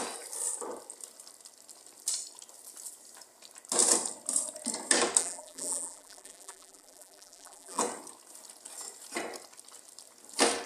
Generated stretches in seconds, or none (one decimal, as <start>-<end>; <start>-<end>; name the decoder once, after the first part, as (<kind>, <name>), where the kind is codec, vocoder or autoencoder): 5.2-7.8 (vocoder, BigVGAN v2)